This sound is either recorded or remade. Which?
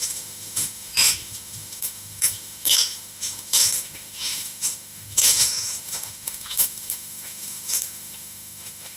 remade